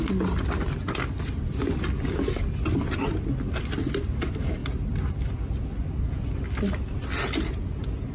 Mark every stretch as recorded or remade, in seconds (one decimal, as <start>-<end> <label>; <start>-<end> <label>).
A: 0.0-8.1 recorded